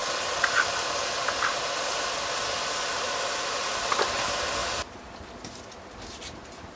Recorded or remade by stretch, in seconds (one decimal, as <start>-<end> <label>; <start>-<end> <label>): 0.0-6.8 recorded